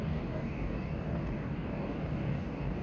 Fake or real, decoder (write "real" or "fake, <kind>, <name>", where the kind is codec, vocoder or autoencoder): fake, codec, DAC